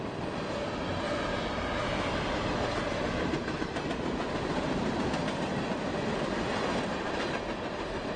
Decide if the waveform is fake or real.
real